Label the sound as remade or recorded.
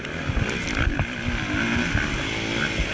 recorded